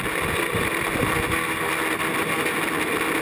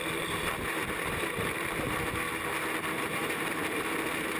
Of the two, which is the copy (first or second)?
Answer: second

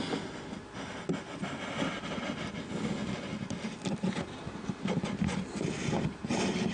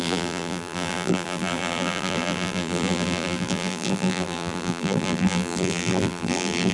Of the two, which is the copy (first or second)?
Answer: second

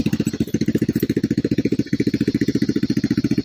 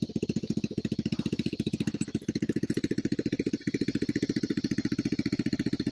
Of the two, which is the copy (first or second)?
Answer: second